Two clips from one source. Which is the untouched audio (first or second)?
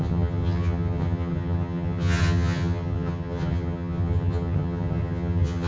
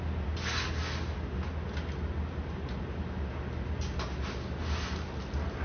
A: second